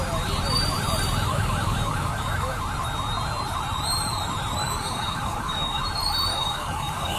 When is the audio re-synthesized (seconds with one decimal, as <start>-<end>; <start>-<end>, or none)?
1.3-2.6; 4.6-5.8; 6.3-7.2